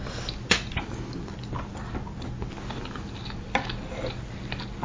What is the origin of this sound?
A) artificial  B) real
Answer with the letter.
B